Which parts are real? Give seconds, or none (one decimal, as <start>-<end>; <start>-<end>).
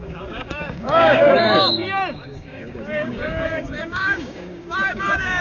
none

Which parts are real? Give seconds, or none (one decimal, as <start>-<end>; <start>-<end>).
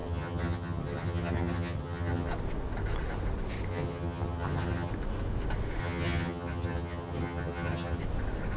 2.3-3.7; 4.9-5.8; 8.0-8.6